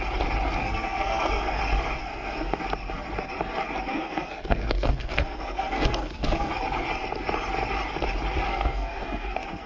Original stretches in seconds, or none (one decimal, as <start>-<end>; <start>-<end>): 0.0-0.6; 1.6-2.0; 2.6-3.9; 6.6-8.5